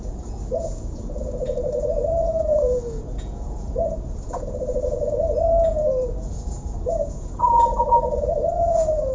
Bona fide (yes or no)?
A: no